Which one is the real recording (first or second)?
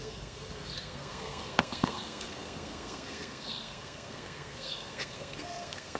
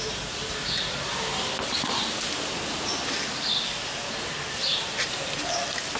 second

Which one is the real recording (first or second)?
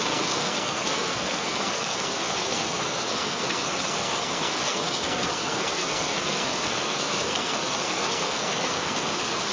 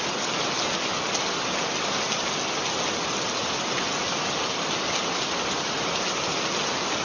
second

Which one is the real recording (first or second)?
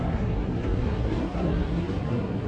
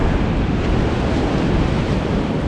second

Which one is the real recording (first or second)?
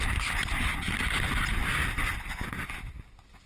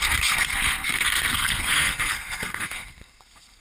first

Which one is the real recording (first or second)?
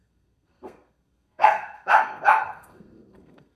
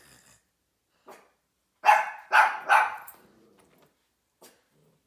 second